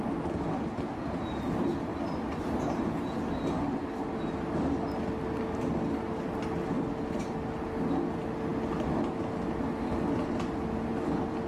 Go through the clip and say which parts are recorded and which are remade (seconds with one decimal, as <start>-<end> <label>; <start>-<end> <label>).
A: 0.0-11.5 recorded